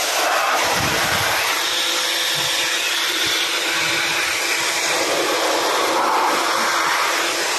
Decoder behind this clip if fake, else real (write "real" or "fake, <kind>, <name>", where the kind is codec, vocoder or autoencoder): real